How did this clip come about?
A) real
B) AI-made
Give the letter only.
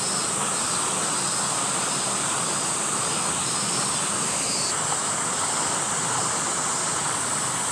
A